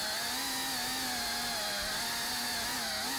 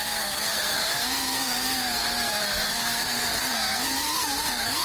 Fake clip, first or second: second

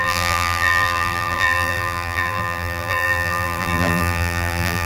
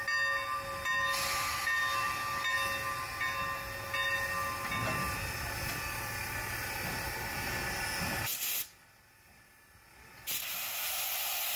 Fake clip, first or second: first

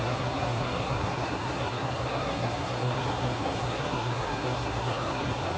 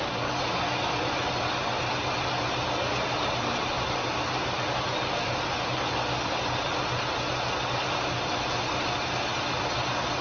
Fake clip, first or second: first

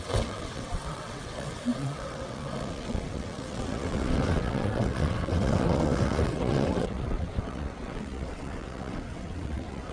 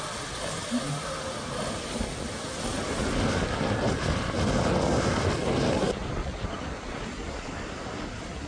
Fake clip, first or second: first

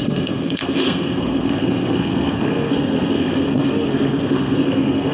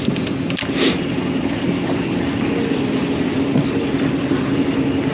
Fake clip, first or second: first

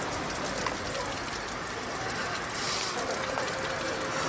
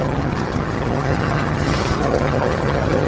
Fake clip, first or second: second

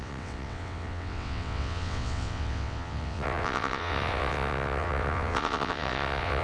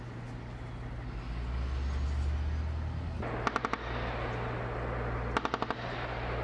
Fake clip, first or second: first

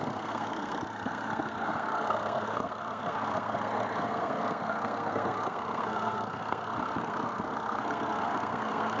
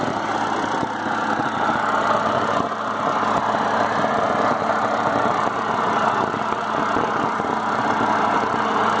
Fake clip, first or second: first